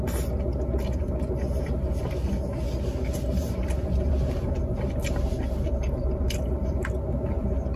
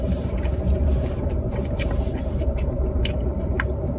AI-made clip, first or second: second